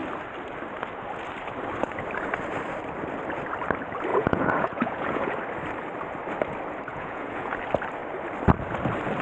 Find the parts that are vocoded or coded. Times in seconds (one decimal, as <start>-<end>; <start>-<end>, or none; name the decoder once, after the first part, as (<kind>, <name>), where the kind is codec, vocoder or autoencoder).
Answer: 4.1-5.3 (vocoder, Vocos); 6.9-7.6